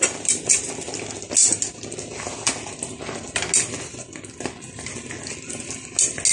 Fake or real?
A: real